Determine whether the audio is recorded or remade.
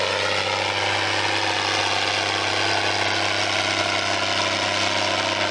recorded